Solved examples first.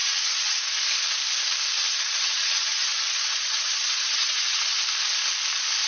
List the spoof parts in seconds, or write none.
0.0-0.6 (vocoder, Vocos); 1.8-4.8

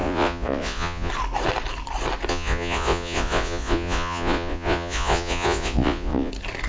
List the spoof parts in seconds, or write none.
0.0-1.1 (vocoder, Vocos); 2.3-6.3

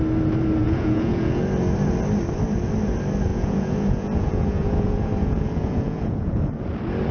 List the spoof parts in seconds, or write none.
0.6-1.4 (vocoder, Vocos); 3.3-6.5

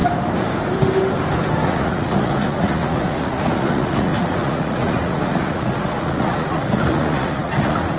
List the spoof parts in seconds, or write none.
1.6-8.0 (vocoder, Vocos)